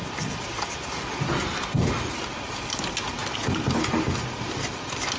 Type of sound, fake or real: real